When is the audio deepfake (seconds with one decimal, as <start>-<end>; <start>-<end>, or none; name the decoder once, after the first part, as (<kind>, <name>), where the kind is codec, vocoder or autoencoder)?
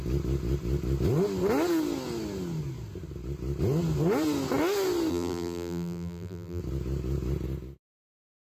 5.1-6.6 (vocoder, BigVGAN v2)